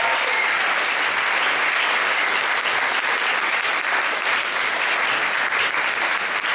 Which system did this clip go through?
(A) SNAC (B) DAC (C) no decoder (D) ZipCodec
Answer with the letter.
C